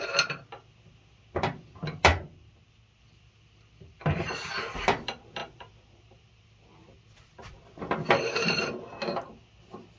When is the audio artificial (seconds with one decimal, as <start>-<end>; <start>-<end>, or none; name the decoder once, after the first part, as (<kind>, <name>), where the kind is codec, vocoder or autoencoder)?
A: 5.4-8.8 (vocoder, BigVGAN v2)